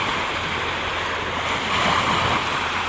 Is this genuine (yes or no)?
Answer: yes